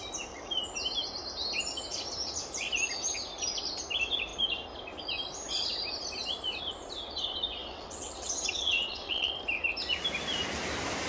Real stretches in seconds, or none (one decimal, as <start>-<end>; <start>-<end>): 0.0-7.6; 9.3-11.1